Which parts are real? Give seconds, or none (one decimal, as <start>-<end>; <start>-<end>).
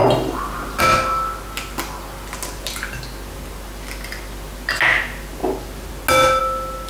0.0-6.9